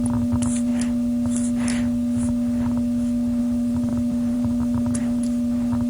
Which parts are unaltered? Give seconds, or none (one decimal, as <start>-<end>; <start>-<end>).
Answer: 0.7-3.4

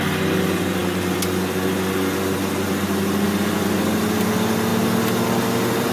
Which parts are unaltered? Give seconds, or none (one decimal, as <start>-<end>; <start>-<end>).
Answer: 0.0-5.9

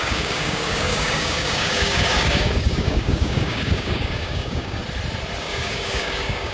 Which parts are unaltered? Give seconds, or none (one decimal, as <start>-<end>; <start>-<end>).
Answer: 4.8-5.4

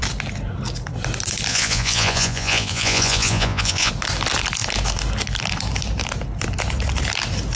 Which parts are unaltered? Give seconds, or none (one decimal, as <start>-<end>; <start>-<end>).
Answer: 0.0-1.5; 3.9-7.6